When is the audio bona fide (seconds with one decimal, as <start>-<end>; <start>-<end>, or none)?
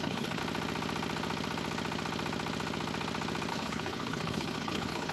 0.4-3.5